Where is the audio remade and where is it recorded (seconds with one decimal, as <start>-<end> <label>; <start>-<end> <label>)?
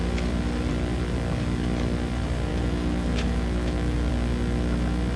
0.0-2.5 recorded; 2.5-4.1 remade; 4.1-5.2 recorded